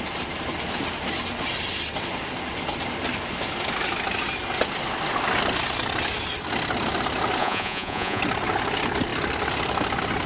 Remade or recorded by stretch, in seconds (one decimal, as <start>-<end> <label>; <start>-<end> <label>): 0.0-7.4 recorded; 7.4-8.2 remade; 8.2-10.3 recorded